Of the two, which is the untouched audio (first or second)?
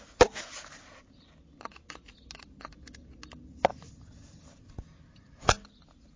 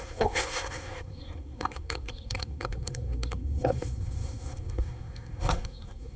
first